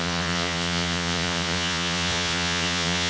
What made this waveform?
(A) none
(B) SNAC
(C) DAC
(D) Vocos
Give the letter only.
D